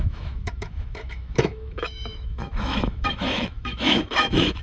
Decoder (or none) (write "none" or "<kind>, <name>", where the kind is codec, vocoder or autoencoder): autoencoder, DAC-VAE